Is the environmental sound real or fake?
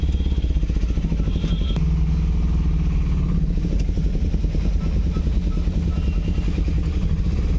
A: real